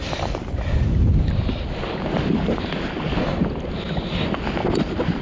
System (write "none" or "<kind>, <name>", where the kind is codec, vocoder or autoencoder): none